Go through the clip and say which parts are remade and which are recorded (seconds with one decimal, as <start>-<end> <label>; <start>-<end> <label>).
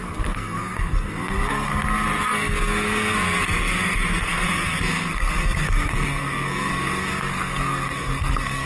0.0-1.7 remade; 1.7-2.2 recorded; 2.2-8.7 remade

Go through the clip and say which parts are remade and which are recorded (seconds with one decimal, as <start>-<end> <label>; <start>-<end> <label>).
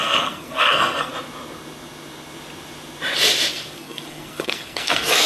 0.0-1.1 remade; 1.1-3.5 recorded; 3.5-5.3 remade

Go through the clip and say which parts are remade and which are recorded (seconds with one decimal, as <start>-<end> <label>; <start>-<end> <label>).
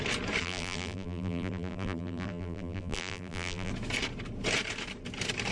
0.0-0.4 recorded; 0.4-3.7 remade; 3.7-5.5 recorded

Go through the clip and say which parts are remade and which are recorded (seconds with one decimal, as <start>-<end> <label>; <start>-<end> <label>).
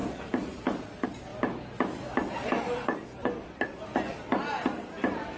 0.0-0.6 remade; 0.6-5.4 recorded